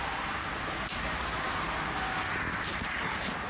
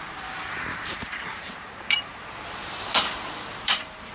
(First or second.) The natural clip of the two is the first